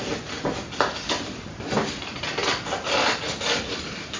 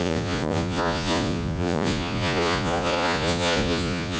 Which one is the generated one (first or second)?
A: second